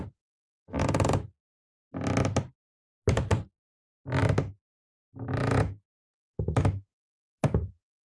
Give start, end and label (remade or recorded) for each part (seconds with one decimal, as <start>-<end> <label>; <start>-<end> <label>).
0.0-5.4 recorded; 5.4-6.0 remade; 6.0-8.1 recorded